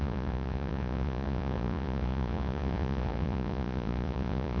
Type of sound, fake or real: fake